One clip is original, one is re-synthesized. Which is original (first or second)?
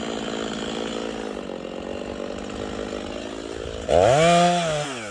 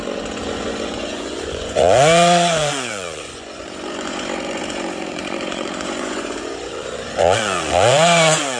first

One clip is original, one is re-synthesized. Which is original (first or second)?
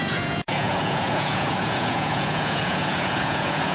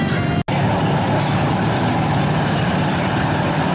second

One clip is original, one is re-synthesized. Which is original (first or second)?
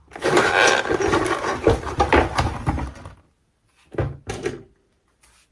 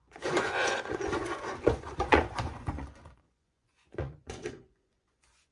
first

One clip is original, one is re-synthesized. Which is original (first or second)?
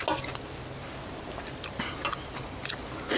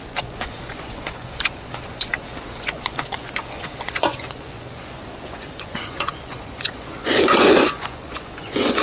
first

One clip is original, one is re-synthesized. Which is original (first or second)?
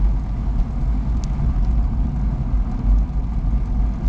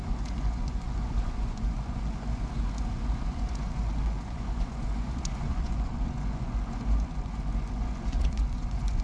first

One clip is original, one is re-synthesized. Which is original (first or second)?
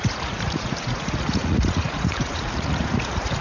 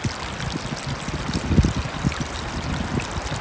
second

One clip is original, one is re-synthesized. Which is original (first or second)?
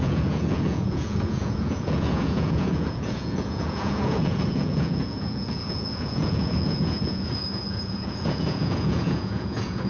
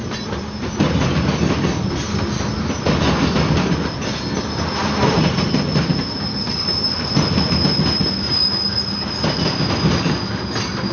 second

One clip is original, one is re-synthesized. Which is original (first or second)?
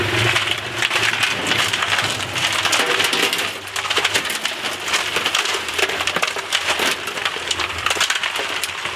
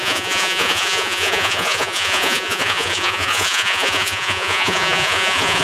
first